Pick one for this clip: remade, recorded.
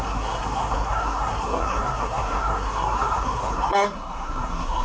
remade